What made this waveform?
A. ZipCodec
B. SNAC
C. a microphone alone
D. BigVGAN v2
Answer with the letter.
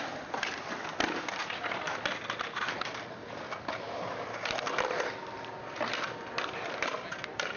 C